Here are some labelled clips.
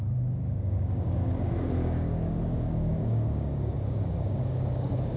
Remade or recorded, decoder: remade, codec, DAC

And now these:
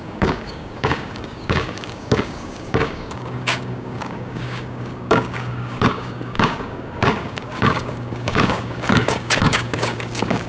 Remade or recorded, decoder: remade, codec, DAC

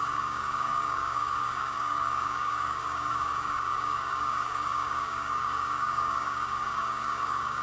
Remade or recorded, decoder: remade, codec, DAC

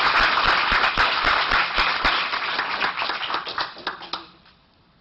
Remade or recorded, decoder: recorded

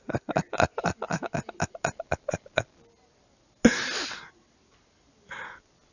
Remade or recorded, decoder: recorded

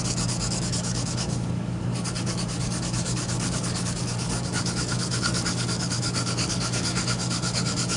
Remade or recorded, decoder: remade, codec, DAC